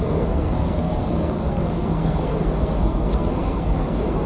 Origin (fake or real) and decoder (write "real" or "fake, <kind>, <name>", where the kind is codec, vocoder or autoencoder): fake, codec, SNAC